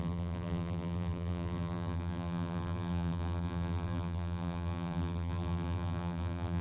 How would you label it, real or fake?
fake